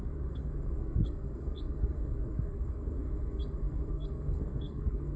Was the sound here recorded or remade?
remade